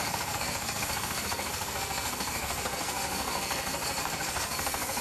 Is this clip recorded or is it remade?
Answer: remade